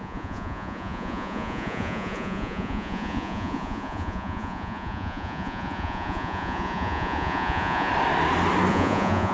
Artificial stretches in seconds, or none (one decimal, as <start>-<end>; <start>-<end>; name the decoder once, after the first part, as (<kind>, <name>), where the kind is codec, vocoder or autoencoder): 0.0-7.9 (vocoder, Vocos); 8.7-9.3